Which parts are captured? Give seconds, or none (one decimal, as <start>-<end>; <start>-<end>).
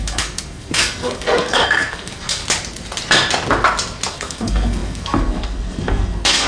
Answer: 2.4-4.1